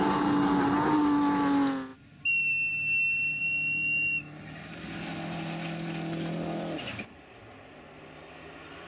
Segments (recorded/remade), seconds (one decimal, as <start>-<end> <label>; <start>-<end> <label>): 0.0-8.9 recorded